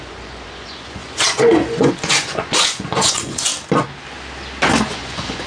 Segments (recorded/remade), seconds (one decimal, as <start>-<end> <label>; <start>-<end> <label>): 0.0-3.5 remade; 3.5-4.8 recorded; 4.8-5.5 remade